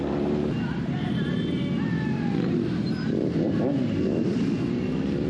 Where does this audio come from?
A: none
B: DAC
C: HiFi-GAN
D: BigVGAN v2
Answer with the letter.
A